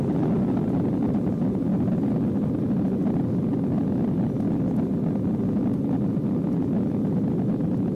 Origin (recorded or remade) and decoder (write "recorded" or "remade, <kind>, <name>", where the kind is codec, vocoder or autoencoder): recorded